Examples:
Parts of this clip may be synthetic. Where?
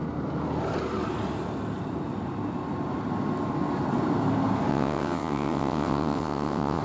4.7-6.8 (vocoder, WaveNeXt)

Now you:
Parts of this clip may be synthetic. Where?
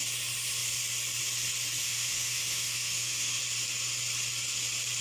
1.8-3.4 (autoencoder, DAC-VAE)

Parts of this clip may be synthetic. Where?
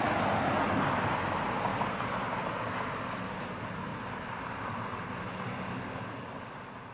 3.9-5.2 (vocoder, BigVGAN v2)